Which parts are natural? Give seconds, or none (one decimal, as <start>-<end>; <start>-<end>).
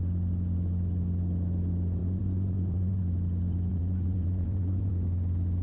0.0-2.0; 3.0-3.7; 4.9-5.6